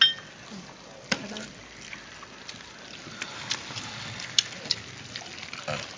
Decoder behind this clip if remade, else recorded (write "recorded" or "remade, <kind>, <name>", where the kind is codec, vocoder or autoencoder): recorded